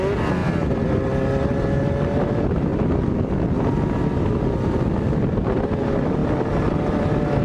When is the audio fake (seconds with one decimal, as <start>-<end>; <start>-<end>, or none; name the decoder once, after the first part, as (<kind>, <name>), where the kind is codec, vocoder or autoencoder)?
2.7-3.3 (vocoder, BigVGAN v2)